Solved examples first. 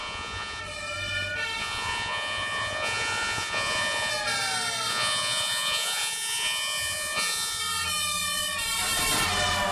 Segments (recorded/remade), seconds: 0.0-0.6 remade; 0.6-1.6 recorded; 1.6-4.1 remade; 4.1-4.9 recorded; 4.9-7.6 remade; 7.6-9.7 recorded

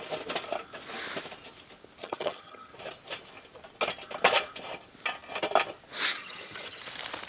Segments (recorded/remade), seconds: 0.0-2.0 recorded; 2.0-2.7 remade; 2.7-6.2 recorded; 6.2-6.8 remade; 6.8-7.3 recorded